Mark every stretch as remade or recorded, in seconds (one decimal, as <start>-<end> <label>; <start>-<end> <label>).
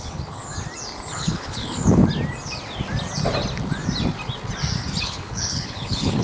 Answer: 0.0-0.4 remade; 0.4-1.1 recorded; 1.1-2.0 remade; 2.0-5.0 recorded; 5.0-6.2 remade